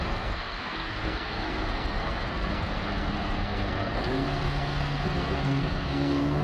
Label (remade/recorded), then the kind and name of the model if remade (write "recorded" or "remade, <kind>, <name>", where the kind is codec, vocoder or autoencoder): remade, codec, SNAC